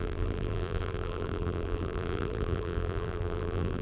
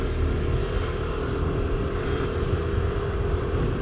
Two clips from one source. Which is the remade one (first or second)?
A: first